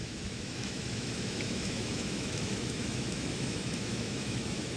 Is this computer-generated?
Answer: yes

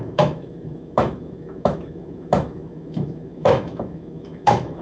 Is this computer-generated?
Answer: yes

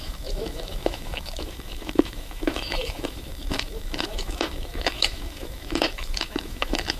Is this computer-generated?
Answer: yes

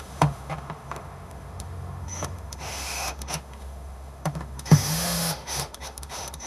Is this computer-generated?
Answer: yes